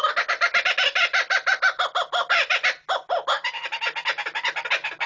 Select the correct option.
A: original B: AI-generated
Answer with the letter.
A